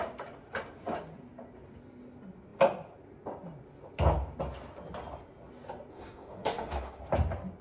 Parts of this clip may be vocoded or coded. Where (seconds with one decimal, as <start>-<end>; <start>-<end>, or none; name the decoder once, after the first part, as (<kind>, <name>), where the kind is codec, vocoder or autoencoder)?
5.9-7.0 (autoencoder, DAC-VAE)